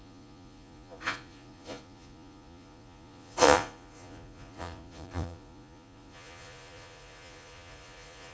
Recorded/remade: remade